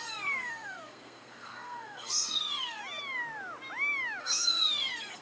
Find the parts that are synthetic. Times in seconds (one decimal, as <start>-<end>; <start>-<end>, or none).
0.0-2.8; 4.2-5.2